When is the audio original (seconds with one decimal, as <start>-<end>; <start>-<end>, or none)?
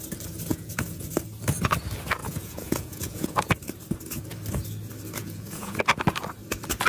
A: 0.0-0.5; 1.1-2.2; 3.5-5.2; 5.8-6.9